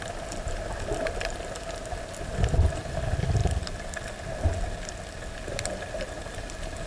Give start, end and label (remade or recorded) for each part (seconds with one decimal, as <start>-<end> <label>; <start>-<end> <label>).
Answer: 0.0-6.9 recorded